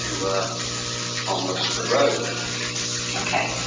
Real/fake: real